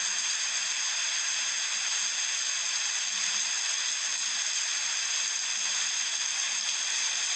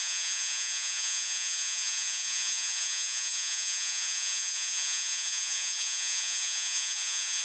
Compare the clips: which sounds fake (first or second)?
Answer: second